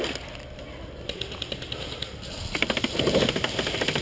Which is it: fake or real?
real